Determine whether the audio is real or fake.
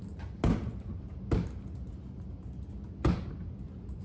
real